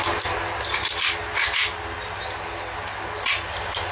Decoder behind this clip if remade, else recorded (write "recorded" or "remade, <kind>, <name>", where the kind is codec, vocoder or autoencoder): recorded